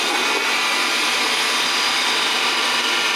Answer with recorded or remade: recorded